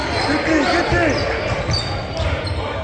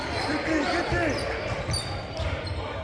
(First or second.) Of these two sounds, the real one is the first